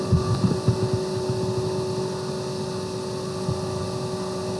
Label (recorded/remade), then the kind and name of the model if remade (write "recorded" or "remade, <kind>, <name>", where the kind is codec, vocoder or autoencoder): recorded